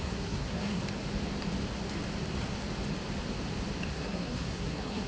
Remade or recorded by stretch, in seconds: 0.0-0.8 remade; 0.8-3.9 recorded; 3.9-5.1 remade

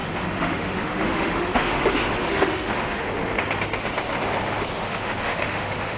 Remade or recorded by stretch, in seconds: 0.0-3.2 remade; 3.2-4.7 recorded; 4.7-6.0 remade

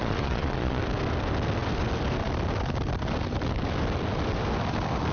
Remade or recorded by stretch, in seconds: 0.0-0.8 remade; 0.8-5.1 recorded

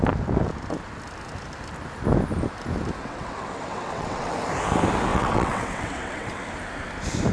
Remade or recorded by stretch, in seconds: 0.0-3.0 recorded; 3.0-4.3 remade; 4.3-5.1 recorded; 5.1-6.4 remade; 6.4-7.3 recorded

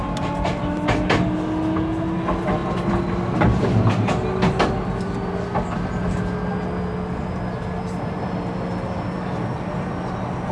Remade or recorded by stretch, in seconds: 0.0-10.5 recorded

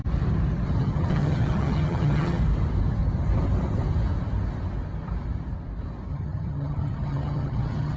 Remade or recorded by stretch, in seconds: 0.0-0.8 recorded; 0.8-2.4 remade; 2.4-6.1 recorded; 6.1-8.0 remade

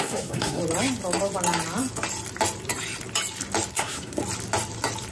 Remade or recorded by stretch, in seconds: 0.0-0.6 remade; 0.6-3.7 recorded; 3.7-4.2 remade; 4.2-5.1 recorded

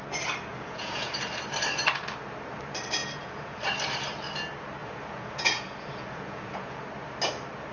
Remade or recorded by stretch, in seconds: 0.0-0.5 recorded; 0.5-1.1 remade; 1.1-3.0 recorded; 3.0-3.6 remade; 3.6-4.8 recorded; 4.8-6.8 remade; 6.8-7.7 recorded